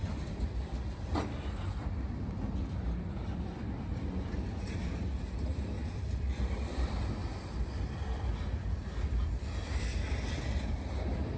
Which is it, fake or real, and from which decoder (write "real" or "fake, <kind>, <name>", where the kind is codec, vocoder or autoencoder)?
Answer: fake, vocoder, BigVGAN v2